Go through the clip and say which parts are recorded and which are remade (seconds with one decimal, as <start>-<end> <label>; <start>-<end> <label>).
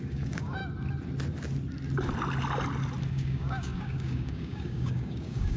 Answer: 0.0-0.6 remade; 0.6-3.1 recorded; 3.1-5.6 remade